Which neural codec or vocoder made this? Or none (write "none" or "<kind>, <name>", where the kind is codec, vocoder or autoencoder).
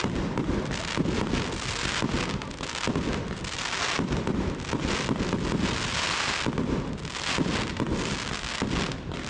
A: none